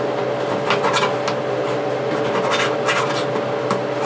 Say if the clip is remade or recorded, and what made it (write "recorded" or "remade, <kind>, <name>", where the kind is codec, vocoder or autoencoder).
recorded